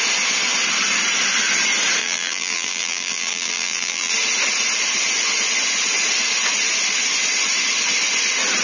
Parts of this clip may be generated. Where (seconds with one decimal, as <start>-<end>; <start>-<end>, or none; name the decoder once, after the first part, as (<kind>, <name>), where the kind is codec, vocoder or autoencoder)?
2.0-4.1 (vocoder, BigVGAN v2)